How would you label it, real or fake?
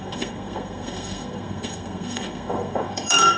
fake